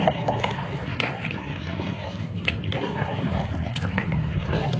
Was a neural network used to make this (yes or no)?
yes